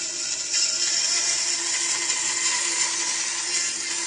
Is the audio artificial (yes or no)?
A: no